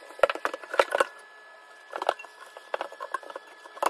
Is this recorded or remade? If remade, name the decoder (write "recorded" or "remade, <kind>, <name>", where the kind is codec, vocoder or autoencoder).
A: recorded